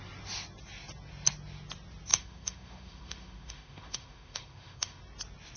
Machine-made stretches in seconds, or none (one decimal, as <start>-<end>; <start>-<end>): 2.1-5.0